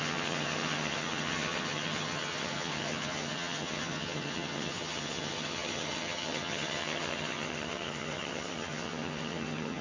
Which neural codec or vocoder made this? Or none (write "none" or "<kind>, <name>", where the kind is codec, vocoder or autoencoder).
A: vocoder, HiFi-GAN